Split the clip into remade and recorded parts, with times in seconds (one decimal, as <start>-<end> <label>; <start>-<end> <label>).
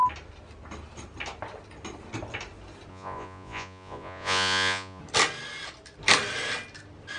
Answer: 0.0-2.9 recorded; 2.9-5.0 remade; 5.0-7.2 recorded